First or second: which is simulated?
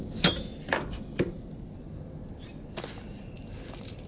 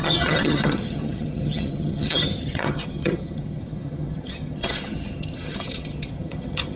second